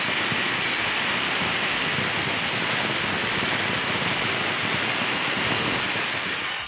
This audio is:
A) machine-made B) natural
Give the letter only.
B